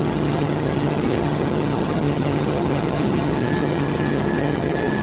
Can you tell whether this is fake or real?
fake